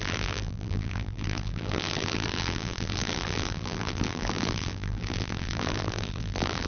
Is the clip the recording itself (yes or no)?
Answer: no